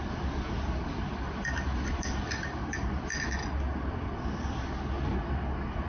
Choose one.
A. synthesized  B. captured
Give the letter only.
B